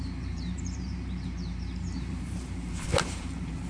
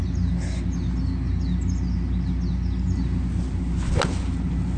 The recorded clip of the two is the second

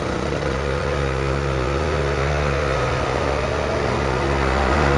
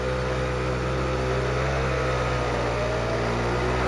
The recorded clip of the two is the second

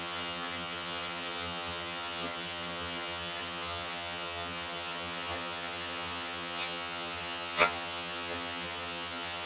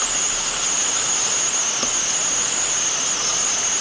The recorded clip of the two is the second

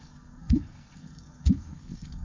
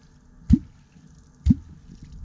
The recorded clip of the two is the second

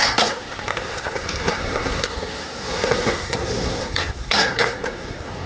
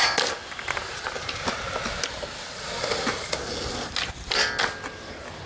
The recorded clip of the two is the second